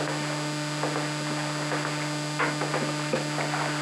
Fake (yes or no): no